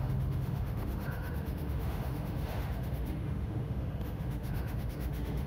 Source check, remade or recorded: remade